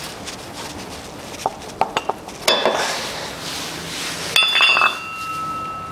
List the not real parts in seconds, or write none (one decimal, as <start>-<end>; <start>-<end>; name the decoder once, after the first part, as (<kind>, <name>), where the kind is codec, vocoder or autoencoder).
none